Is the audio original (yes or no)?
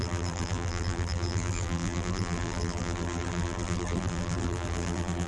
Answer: no